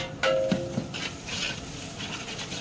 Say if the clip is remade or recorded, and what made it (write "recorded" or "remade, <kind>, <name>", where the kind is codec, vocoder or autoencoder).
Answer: recorded